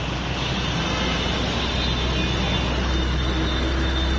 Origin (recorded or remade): recorded